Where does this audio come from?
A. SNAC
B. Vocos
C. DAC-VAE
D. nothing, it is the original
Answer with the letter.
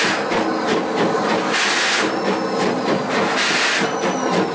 D